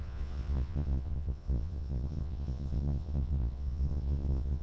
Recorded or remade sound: remade